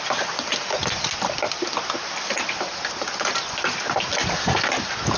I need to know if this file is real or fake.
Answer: real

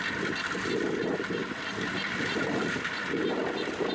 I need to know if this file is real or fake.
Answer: fake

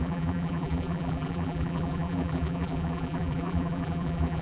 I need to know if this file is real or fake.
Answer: fake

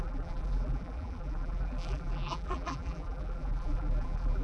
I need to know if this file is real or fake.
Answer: fake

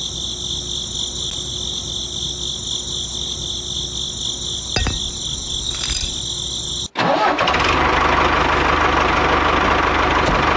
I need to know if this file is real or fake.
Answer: real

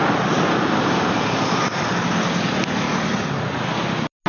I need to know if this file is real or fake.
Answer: real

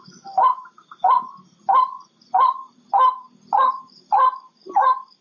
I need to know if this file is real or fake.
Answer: real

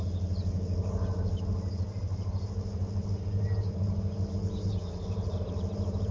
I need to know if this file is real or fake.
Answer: real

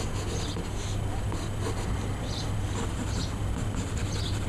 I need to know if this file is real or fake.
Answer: real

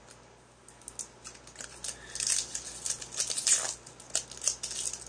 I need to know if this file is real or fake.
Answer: real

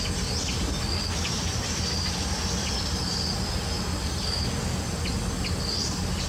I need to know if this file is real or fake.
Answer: real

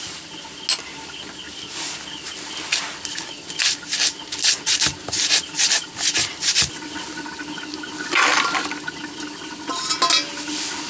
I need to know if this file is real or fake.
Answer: real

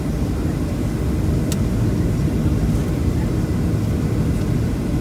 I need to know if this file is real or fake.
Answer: real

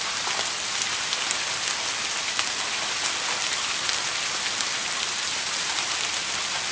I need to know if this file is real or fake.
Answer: real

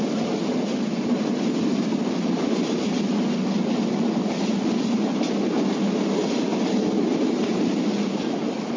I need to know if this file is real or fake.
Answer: real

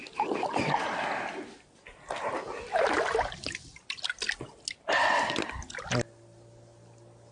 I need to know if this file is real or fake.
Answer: real